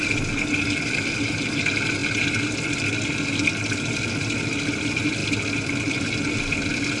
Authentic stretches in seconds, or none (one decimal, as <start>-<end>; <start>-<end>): 0.0-7.0